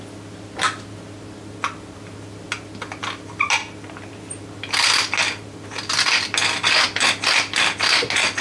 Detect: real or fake real